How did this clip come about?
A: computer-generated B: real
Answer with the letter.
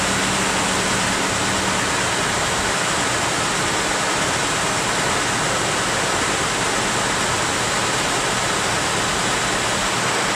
B